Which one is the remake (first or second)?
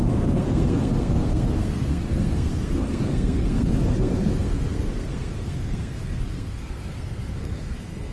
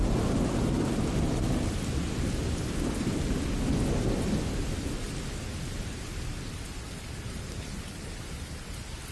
first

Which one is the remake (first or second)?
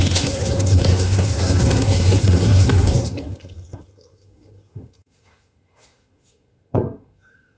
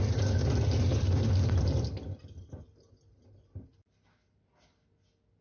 first